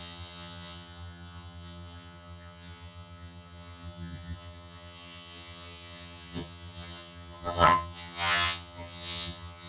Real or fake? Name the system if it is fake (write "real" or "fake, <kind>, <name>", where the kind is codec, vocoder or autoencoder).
fake, vocoder, HiFi-GAN